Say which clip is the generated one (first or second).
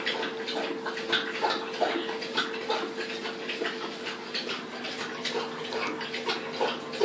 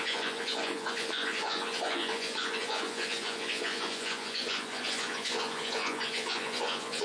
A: second